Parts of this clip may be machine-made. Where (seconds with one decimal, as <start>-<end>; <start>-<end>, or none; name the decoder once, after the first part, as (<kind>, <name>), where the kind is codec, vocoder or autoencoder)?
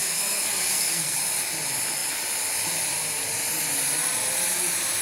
0.0-1.2 (codec, SNAC)